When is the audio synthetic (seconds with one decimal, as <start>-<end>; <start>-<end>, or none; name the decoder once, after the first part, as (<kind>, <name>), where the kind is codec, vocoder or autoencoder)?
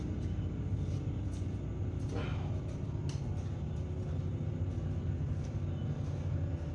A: none